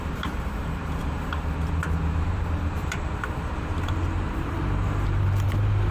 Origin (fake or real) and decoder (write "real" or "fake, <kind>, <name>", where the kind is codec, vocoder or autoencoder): fake, vocoder, BigVGAN v2